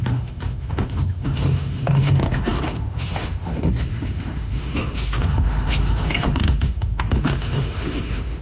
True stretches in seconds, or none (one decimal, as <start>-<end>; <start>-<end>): none